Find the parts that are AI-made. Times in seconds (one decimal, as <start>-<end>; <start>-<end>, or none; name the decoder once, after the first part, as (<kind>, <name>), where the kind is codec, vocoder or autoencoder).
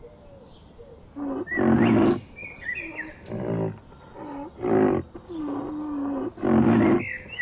none